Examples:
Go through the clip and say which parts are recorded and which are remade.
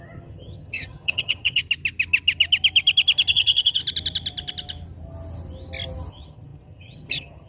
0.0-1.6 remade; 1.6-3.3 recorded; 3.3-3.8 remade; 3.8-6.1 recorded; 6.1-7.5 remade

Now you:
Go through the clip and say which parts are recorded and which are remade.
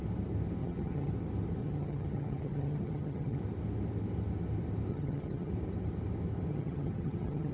0.0-0.6 recorded; 0.6-1.1 remade; 1.1-1.6 recorded; 1.6-3.4 remade; 3.4-4.9 recorded; 4.9-5.5 remade; 5.5-6.5 recorded; 6.5-7.5 remade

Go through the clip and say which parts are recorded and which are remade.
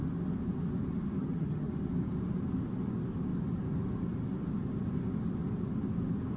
0.0-1.2 recorded; 1.2-1.7 remade; 1.7-6.4 recorded